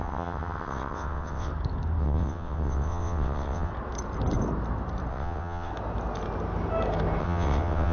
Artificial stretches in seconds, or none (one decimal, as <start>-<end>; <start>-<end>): 0.0-1.5; 2.0-3.7; 5.1-5.7; 7.2-7.9